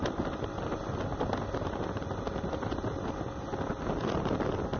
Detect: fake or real real